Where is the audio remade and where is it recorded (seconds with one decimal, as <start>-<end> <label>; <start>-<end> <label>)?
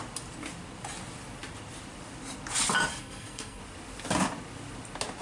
0.0-2.9 recorded; 2.9-3.6 remade; 3.6-5.2 recorded